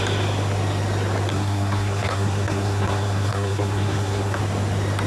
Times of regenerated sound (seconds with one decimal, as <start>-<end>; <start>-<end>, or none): 1.3-4.4